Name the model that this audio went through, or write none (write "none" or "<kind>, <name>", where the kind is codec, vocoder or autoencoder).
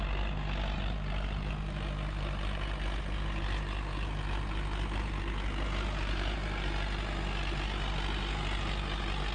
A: none